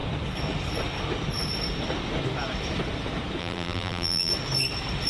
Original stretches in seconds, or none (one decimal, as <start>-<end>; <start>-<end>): 0.0-3.4; 4.3-5.1